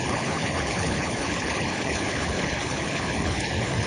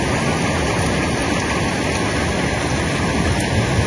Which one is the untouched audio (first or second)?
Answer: second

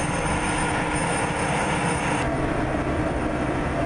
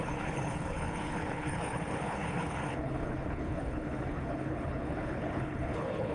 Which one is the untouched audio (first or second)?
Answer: first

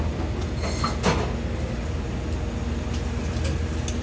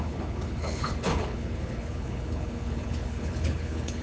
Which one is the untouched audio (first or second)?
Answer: first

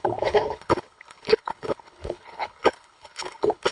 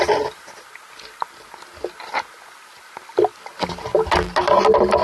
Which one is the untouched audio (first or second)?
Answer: second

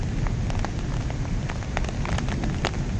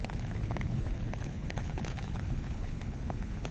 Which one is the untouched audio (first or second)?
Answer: first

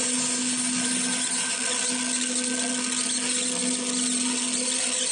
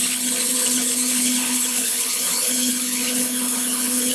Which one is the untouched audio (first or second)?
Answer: first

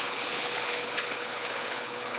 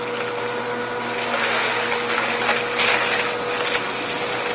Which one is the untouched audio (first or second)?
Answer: second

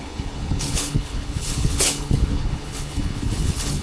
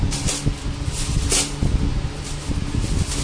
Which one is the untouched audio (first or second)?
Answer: second